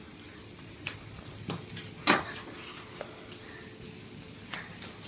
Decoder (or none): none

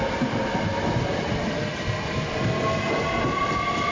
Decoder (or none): none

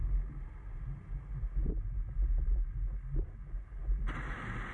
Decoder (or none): none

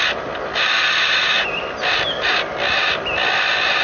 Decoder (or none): none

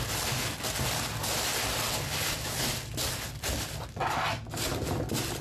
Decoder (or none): none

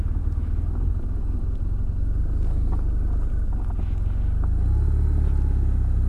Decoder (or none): none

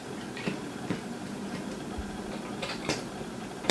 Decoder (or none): vocoder, BigVGAN v2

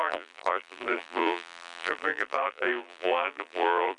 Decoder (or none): vocoder, BigVGAN v2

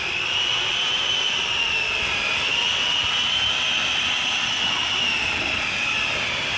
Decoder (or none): vocoder, BigVGAN v2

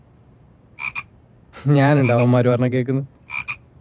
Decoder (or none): vocoder, BigVGAN v2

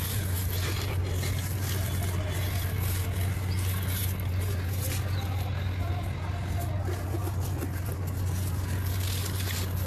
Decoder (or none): none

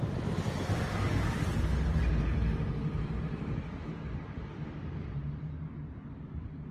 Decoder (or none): none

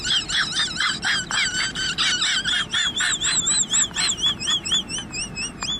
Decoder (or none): none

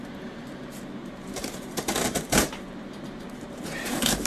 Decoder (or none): vocoder, BigVGAN v2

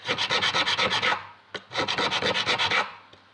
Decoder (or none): none